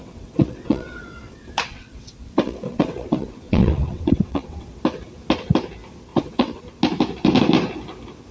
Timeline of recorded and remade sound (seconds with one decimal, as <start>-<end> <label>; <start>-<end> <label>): 0.0-4.8 remade; 4.8-6.1 recorded; 6.1-6.6 remade; 6.6-8.3 recorded